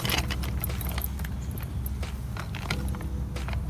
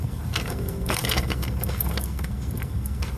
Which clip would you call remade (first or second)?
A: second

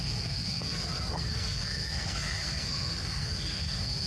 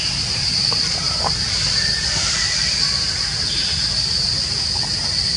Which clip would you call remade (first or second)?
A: first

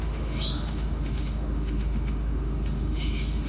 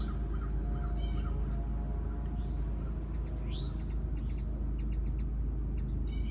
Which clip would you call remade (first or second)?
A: first